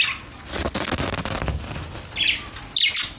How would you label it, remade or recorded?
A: recorded